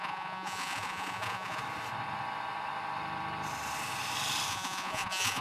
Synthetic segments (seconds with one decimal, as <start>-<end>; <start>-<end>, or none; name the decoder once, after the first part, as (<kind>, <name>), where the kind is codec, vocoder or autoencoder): 0.0-1.6 (vocoder, Vocos); 4.5-5.4